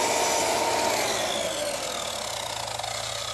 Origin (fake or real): real